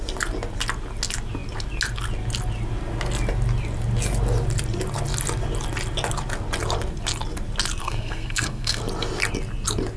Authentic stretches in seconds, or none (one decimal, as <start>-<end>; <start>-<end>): 0.0-7.8; 8.8-10.0